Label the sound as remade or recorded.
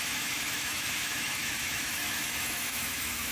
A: remade